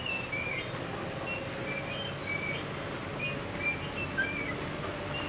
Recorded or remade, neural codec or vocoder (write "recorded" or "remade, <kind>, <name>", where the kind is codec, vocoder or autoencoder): recorded